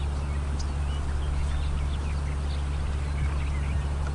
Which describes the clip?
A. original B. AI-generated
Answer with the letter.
A